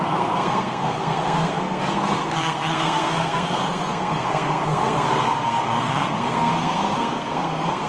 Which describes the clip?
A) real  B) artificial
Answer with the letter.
B